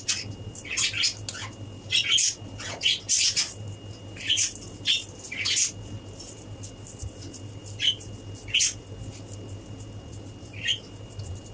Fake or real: real